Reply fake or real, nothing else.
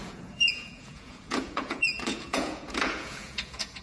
fake